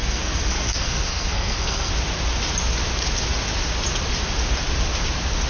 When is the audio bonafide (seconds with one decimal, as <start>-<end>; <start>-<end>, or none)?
1.9-5.5